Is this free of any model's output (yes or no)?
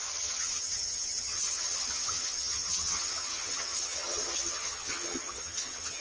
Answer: no